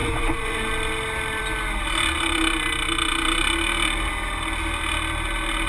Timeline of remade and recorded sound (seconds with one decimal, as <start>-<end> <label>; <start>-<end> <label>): 0.0-0.6 remade; 0.6-5.7 recorded